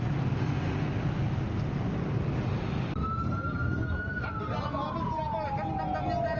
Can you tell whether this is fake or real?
real